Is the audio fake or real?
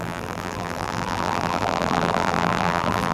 fake